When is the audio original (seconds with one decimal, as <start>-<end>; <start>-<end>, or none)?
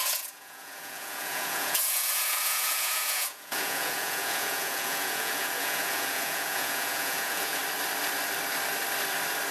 7.6-9.5